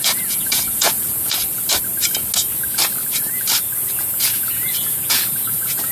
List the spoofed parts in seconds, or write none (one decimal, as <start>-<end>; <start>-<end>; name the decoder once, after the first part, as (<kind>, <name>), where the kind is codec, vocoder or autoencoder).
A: 0.0-1.4 (vocoder, Vocos); 3.9-5.9